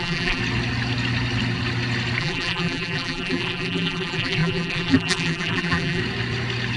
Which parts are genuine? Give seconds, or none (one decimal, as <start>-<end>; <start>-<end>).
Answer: 0.4-2.2; 6.0-6.8